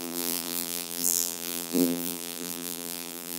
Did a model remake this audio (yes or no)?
yes